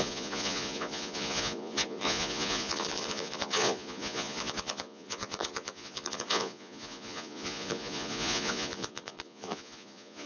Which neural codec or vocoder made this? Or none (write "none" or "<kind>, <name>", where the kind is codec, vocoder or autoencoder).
vocoder, Vocos